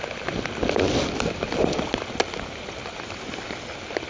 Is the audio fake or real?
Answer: real